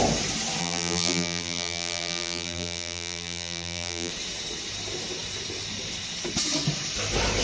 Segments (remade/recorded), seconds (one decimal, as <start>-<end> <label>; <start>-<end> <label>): 0.0-0.6 recorded; 0.6-4.1 remade; 4.1-7.4 recorded